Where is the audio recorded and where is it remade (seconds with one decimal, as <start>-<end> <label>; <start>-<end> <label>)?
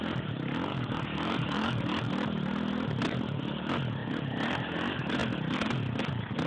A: 0.0-0.7 recorded; 0.7-2.1 remade; 2.1-6.5 recorded